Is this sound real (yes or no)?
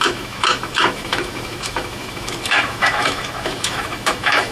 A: no